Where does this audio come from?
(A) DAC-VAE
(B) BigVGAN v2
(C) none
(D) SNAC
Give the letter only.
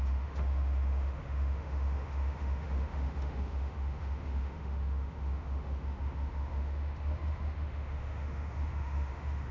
A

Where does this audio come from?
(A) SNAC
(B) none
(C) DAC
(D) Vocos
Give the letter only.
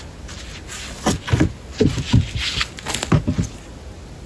B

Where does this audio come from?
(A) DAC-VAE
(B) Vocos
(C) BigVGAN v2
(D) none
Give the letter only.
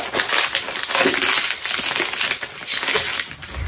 D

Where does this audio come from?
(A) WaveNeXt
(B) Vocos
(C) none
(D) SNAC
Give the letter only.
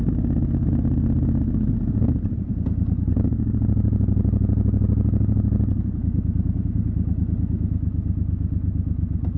C